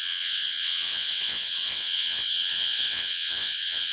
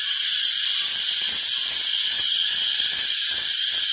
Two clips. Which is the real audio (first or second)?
second